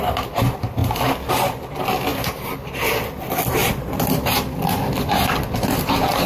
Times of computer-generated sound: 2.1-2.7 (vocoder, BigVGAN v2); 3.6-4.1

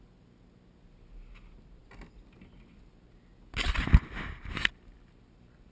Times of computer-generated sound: none

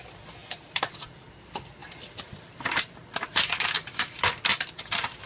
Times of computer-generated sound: 0.4-0.9 (vocoder, BigVGAN v2); 1.8-3.4; 4.5-5.3